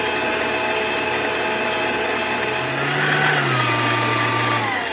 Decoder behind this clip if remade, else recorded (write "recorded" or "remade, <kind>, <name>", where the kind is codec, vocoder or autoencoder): recorded